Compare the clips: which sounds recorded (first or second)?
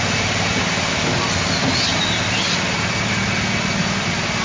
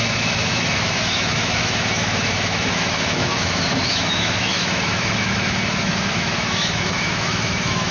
first